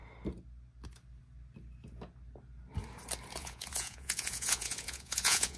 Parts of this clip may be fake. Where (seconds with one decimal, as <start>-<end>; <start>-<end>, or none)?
3.4-5.6

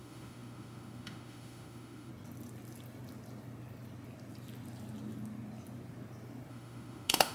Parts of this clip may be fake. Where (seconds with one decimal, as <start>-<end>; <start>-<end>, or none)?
0.0-2.1; 6.5-7.3

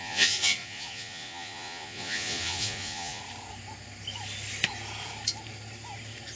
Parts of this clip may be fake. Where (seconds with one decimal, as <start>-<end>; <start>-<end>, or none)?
0.0-3.2

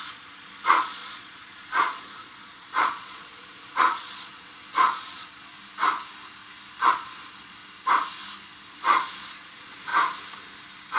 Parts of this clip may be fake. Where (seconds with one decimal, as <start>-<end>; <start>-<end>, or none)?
0.0-5.5; 6.9-7.6; 8.7-9.9

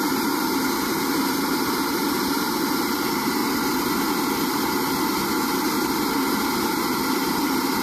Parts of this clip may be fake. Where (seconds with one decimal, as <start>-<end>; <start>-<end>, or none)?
0.0-3.4; 6.6-7.8

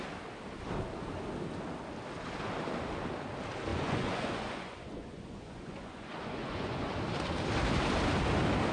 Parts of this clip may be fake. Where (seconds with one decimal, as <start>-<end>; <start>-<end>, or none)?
3.7-6.9

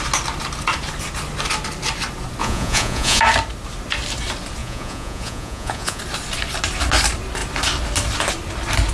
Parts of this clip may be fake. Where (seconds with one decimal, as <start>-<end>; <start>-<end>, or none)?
2.4-3.2; 4.6-6.0

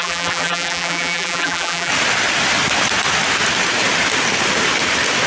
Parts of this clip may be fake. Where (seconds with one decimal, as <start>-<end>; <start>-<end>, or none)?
0.0-1.9